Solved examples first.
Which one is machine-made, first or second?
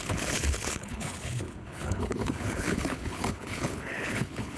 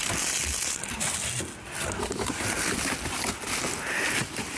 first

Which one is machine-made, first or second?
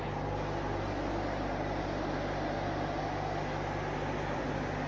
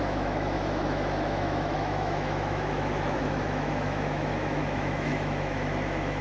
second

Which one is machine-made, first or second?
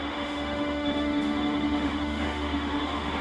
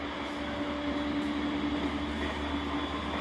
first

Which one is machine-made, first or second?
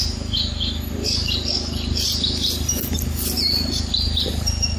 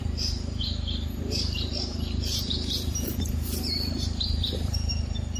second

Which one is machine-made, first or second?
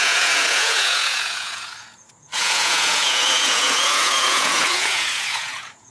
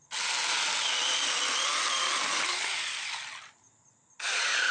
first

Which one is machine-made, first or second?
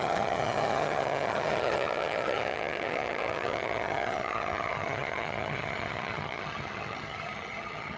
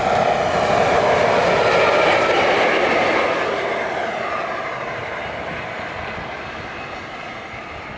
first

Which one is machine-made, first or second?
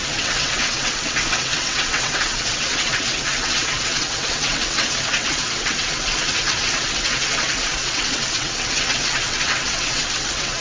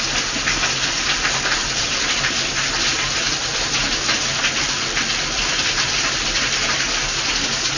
first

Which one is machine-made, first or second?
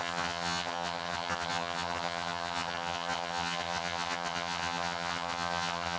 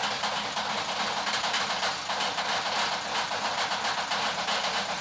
first